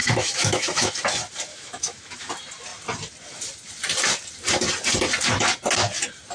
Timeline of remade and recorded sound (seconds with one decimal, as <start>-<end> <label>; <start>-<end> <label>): 0.0-0.9 remade; 0.9-1.5 recorded; 1.5-2.3 remade; 2.3-6.3 recorded